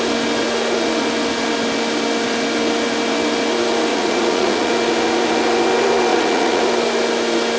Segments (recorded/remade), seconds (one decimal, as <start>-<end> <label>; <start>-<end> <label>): 0.0-3.9 recorded; 3.9-4.7 remade; 4.7-6.1 recorded; 6.1-6.7 remade; 6.7-7.6 recorded